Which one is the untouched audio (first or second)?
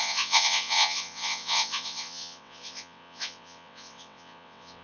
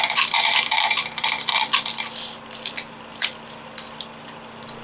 second